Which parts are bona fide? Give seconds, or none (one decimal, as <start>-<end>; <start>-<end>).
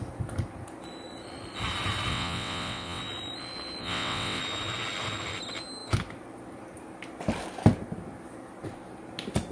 0.0-2.1; 3.0-3.8; 4.4-9.5